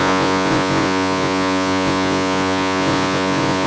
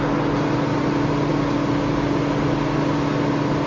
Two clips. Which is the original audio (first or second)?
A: second